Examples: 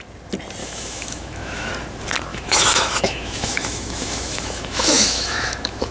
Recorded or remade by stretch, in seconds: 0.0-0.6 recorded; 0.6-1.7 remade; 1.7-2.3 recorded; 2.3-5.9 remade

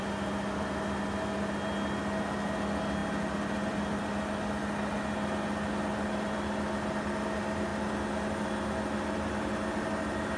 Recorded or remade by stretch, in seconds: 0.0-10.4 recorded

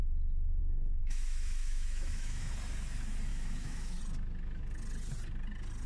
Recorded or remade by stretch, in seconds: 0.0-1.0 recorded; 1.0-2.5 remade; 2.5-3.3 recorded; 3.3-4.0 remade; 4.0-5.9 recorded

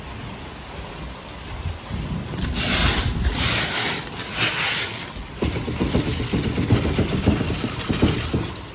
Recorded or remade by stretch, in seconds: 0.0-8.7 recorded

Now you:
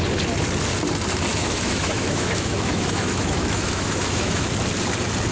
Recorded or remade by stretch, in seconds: 0.0-1.3 recorded; 1.3-4.5 remade; 4.5-5.3 recorded